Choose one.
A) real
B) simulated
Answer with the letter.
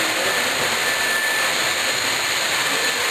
A